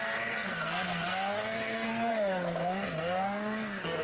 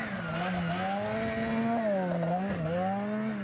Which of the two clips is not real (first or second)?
first